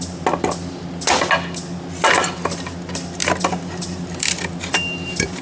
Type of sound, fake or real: real